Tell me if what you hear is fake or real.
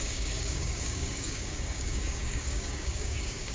fake